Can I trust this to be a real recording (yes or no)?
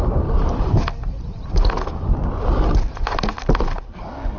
yes